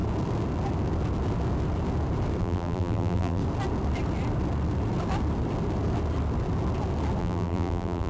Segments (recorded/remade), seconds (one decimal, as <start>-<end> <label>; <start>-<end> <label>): 0.0-2.4 recorded; 2.4-3.4 remade; 3.4-7.2 recorded; 7.2-8.1 remade